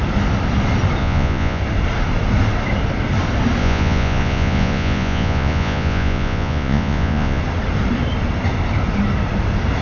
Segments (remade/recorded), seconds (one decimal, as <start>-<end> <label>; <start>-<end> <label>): 0.0-1.0 recorded; 1.0-1.6 remade; 1.6-3.6 recorded; 3.6-7.4 remade; 7.4-9.8 recorded